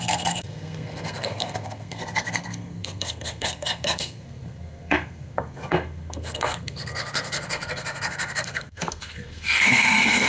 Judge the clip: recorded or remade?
remade